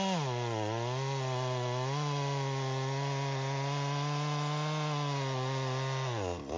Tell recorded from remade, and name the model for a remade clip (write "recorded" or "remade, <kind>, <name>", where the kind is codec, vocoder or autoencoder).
recorded